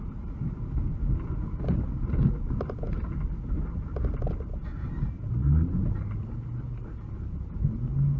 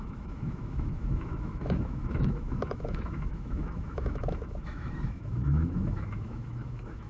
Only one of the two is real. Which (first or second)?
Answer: first